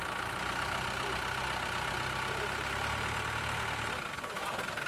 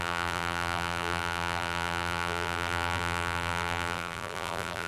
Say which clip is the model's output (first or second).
second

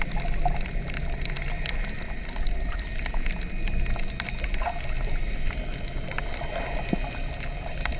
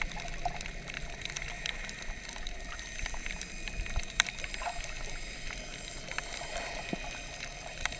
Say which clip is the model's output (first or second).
second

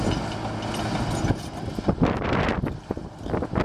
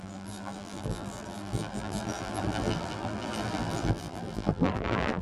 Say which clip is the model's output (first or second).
second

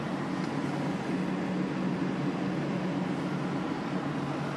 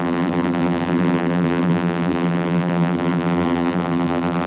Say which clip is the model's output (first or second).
second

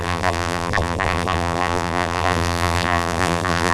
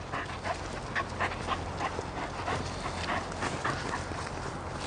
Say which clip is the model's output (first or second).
first